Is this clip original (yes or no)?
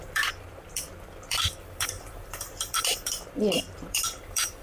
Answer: no